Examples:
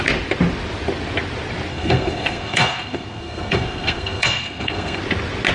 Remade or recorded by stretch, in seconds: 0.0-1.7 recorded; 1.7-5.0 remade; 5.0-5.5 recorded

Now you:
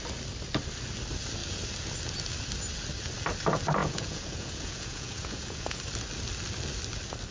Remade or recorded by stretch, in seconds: 0.0-3.8 recorded; 3.8-5.8 remade; 5.8-7.3 recorded

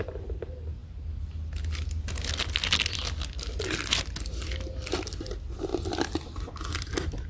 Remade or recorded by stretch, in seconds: 0.0-7.3 recorded

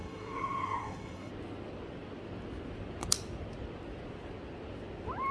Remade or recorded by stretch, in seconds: 0.0-1.3 remade; 1.3-5.3 recorded

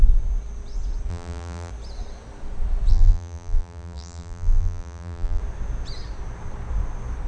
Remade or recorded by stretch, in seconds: 0.0-1.1 recorded; 1.1-1.7 remade; 1.7-2.9 recorded; 2.9-5.4 remade; 5.4-7.3 recorded

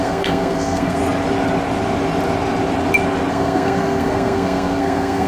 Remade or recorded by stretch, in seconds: 0.0-1.0 remade; 1.0-3.3 recorded; 3.3-5.3 remade